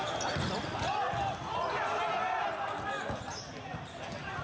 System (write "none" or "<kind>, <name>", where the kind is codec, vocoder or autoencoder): none